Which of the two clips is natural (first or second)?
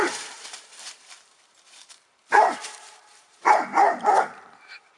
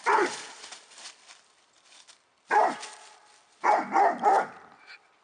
second